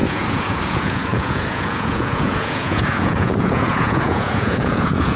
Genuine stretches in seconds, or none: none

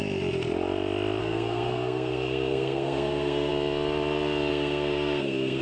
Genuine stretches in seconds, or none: 0.0-1.2; 3.5-4.5

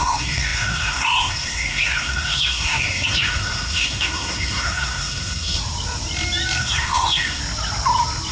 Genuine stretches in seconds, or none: 5.6-6.6; 7.4-8.3